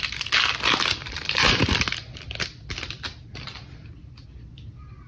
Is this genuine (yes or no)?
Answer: yes